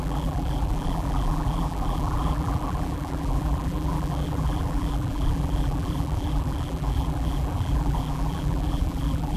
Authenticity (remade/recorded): remade